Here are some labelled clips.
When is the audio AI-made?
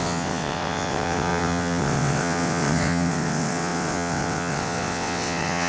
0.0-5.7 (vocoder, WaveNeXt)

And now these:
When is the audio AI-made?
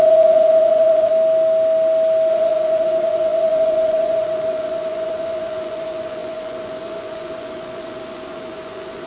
0.0-1.1 (vocoder, Vocos); 2.3-9.1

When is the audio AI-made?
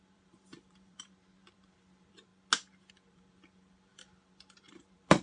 0.0-2.3 (vocoder, BigVGAN v2); 2.9-5.2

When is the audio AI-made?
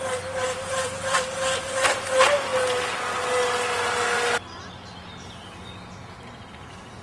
none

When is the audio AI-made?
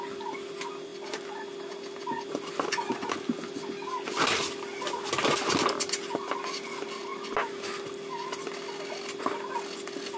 none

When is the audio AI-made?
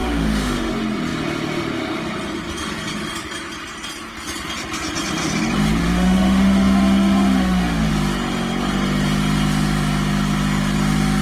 0.0-0.7 (autoencoder, DAC-VAE); 5.8-7.9